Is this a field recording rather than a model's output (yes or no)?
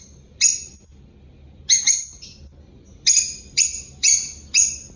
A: yes